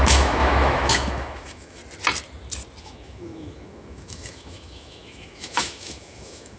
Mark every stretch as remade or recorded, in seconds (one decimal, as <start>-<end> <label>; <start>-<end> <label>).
0.0-1.8 remade; 1.8-2.8 recorded; 2.8-6.6 remade